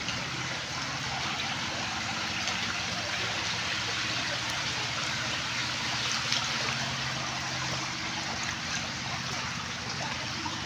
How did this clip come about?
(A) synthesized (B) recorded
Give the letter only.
B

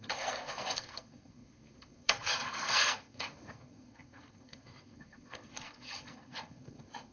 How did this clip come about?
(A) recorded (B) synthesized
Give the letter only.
B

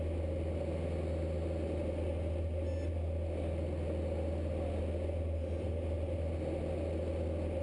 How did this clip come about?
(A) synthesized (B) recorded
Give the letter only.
B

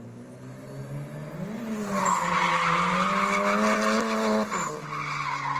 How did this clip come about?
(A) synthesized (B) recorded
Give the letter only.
B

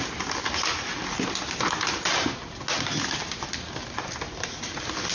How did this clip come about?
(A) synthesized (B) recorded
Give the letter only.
B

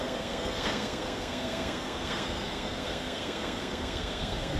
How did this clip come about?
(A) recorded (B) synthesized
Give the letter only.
B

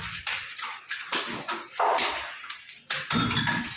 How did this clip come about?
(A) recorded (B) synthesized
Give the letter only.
A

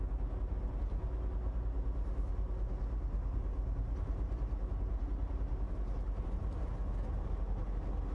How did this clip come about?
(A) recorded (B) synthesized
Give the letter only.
A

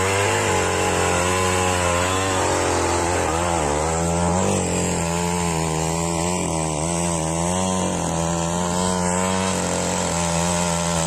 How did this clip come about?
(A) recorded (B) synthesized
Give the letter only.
A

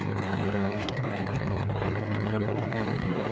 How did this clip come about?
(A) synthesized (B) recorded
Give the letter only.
A